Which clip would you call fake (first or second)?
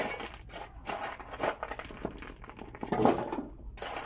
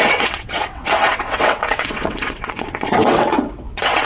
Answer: second